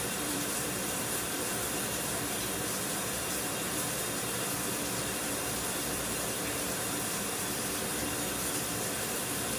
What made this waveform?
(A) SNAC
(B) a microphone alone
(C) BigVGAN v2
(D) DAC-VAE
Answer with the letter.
C